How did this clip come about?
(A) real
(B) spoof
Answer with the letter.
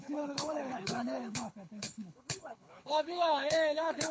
B